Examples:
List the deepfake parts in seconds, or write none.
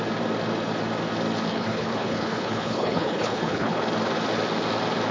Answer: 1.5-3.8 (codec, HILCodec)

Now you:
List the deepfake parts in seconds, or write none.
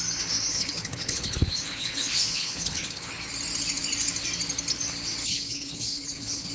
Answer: 0.5-3.1 (codec, HILCodec); 5.2-6.5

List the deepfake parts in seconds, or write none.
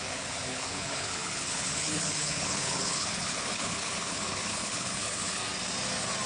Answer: 0.0-5.4 (codec, HILCodec)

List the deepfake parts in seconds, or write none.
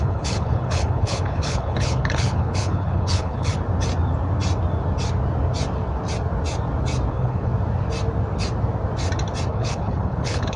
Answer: 0.0-3.5 (codec, HILCodec); 7.1-7.5; 9.5-10.6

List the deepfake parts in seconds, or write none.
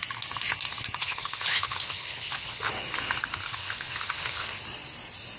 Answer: 1.0-2.7 (codec, HILCodec); 3.4-4.6